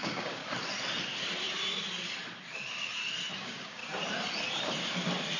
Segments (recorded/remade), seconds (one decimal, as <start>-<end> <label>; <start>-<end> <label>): 0.0-0.4 remade; 0.4-3.4 recorded; 3.4-3.8 remade; 3.8-5.4 recorded